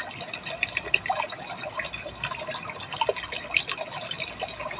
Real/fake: real